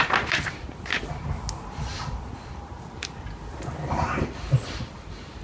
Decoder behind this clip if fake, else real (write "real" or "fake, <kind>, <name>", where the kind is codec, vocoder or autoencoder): real